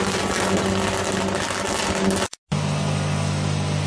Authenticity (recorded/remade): recorded